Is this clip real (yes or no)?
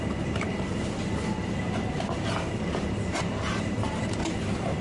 yes